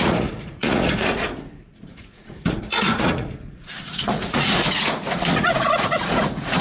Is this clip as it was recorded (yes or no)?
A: no